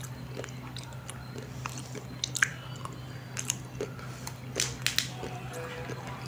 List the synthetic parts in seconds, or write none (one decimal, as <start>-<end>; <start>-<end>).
0.0-2.5